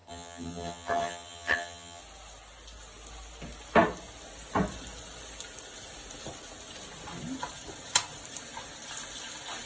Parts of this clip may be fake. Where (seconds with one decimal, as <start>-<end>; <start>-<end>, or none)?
0.0-2.0